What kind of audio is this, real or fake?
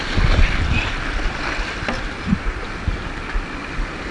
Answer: real